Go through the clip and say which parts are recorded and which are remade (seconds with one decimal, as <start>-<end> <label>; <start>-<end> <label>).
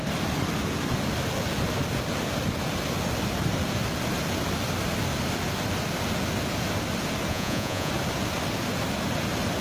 0.0-7.3 recorded; 7.3-7.9 remade; 7.9-9.6 recorded